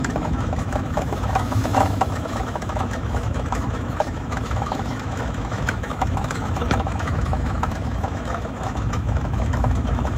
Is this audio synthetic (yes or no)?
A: yes